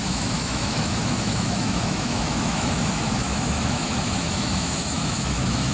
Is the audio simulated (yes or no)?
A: yes